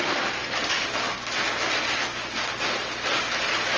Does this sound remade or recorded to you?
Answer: recorded